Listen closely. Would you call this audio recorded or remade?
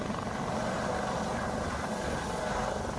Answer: recorded